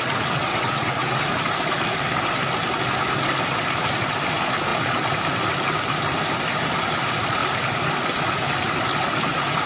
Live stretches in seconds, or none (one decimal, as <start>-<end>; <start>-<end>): 0.0-0.5; 1.2-9.7